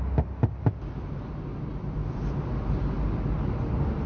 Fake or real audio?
real